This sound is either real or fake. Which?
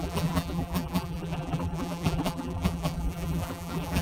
fake